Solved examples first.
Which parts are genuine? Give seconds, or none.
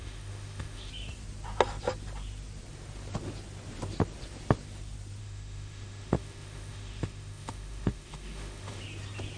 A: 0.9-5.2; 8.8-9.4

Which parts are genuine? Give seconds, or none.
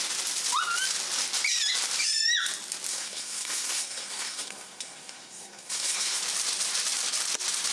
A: 0.0-2.9; 6.2-7.7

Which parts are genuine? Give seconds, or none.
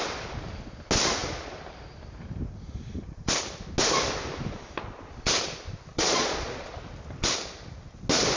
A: 0.0-5.9; 6.7-8.4